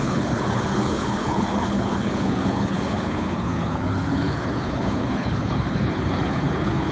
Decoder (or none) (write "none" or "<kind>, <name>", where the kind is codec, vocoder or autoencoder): codec, HILCodec